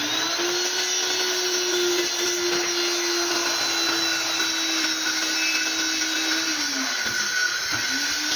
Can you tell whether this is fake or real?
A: real